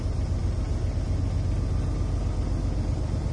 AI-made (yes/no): no